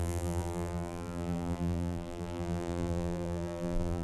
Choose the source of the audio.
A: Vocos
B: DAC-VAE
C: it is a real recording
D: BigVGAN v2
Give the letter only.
D